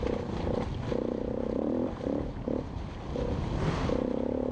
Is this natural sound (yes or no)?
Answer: yes